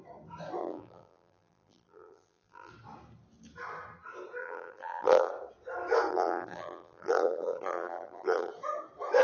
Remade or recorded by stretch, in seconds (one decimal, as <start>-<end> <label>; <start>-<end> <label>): 0.0-0.6 recorded; 0.6-2.7 remade; 2.7-4.4 recorded; 4.4-5.3 remade; 5.3-6.1 recorded; 6.1-8.5 remade; 8.5-9.2 recorded